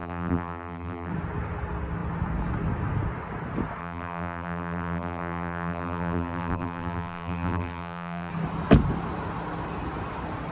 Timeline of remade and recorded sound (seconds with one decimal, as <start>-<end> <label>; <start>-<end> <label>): 0.0-1.1 remade; 1.1-3.8 recorded; 3.8-8.3 remade; 8.3-10.5 recorded